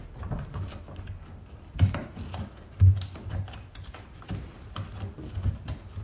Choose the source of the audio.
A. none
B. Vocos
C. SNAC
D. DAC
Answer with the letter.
A